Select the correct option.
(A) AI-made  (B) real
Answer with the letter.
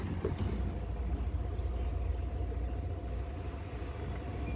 B